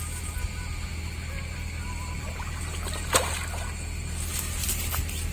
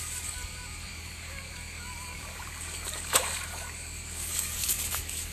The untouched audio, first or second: first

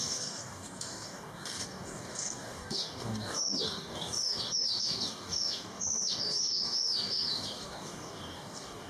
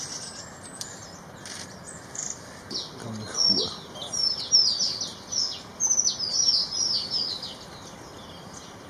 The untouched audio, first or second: second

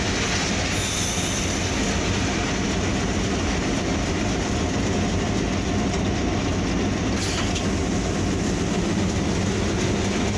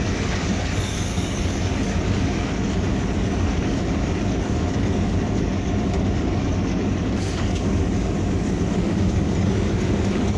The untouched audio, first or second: first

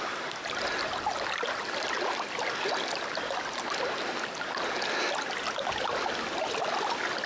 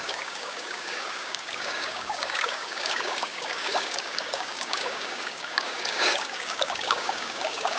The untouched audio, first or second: first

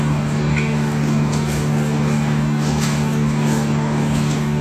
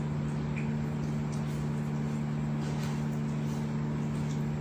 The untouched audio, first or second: second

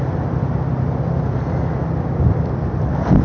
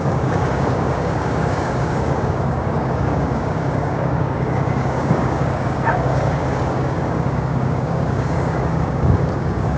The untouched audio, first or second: first